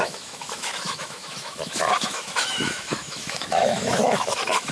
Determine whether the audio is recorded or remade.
remade